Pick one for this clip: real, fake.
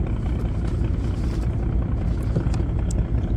real